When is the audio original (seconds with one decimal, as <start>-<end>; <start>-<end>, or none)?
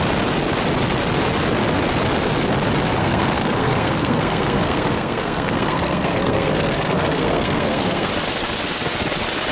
0.0-3.0; 8.1-9.5